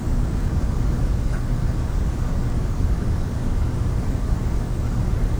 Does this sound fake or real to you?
fake